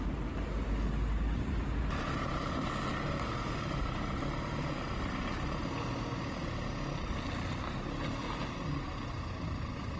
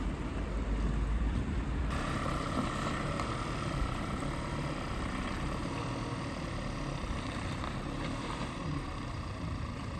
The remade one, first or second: second